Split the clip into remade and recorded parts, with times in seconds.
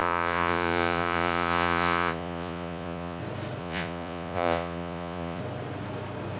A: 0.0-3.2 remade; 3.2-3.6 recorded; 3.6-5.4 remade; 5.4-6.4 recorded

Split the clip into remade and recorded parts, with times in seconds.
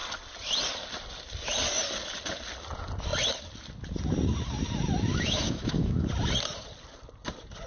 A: 0.0-5.1 recorded; 5.1-6.1 remade; 6.1-7.7 recorded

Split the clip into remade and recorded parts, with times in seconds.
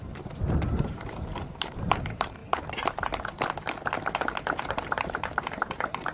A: 0.0-2.4 remade; 2.4-4.7 recorded; 4.7-6.1 remade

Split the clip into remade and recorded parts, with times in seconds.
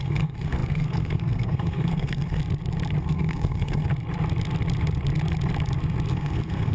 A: 0.0-2.4 remade; 2.4-3.0 recorded; 3.0-3.9 remade; 3.9-6.1 recorded; 6.1-6.7 remade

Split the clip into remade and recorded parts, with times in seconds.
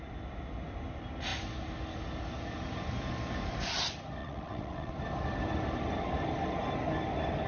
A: 0.0-4.2 recorded; 4.2-4.9 remade; 4.9-7.5 recorded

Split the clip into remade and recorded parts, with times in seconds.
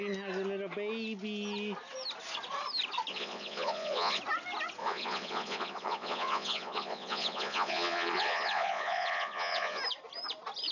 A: 0.0-3.1 recorded; 3.1-4.2 remade; 4.2-4.8 recorded; 4.8-9.8 remade; 9.8-10.7 recorded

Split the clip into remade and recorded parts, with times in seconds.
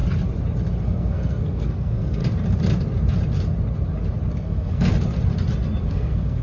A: 0.0-0.8 recorded; 0.8-2.2 remade; 2.2-4.3 recorded; 4.3-4.9 remade; 4.9-5.8 recorded; 5.8-6.4 remade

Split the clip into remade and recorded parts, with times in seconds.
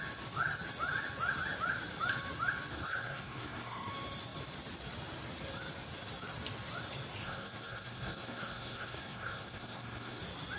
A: 0.0-2.7 recorded; 2.7-3.9 remade; 3.9-7.2 recorded; 7.2-10.2 remade; 10.2-10.6 recorded